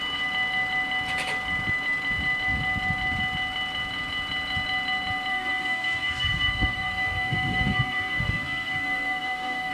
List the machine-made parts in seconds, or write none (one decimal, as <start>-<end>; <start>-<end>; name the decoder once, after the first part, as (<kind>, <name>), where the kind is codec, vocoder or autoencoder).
5.3-9.7 (codec, SNAC)

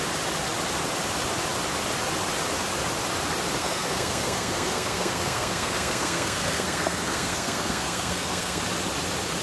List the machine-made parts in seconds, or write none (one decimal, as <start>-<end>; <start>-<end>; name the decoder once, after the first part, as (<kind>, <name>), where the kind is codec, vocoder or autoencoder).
3.6-8.6 (codec, SNAC)

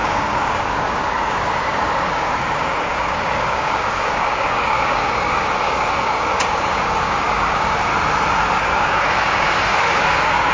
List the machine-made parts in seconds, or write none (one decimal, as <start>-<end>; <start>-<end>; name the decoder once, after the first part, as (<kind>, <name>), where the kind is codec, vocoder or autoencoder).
0.0-7.9 (codec, DAC); 8.6-10.5

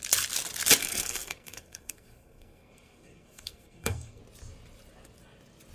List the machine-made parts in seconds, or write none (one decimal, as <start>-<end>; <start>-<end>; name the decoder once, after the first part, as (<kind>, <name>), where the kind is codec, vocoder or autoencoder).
0.8-4.2 (codec, SNAC)

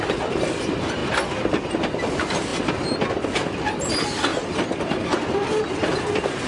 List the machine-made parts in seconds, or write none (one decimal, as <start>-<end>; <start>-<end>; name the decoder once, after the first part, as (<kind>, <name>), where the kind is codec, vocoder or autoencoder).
none

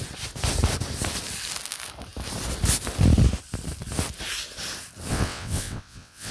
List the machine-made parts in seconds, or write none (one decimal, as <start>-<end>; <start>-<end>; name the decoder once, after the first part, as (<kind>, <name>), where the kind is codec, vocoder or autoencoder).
5.1-6.3 (vocoder, WaveNeXt)

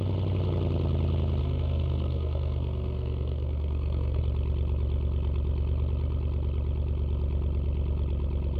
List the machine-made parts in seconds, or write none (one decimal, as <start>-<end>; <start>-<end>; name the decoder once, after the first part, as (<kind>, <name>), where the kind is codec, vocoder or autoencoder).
1.4-4.2 (codec, SNAC)